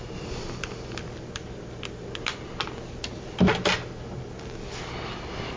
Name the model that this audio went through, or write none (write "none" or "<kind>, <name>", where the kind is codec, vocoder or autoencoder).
none